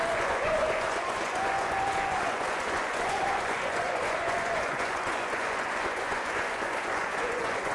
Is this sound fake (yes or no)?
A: yes